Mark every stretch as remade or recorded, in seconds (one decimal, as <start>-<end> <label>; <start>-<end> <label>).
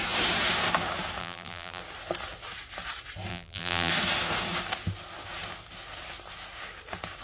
0.0-1.2 recorded; 1.2-1.8 remade; 1.8-3.3 recorded; 3.3-3.9 remade; 3.9-7.2 recorded